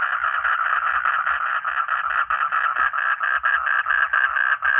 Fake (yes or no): no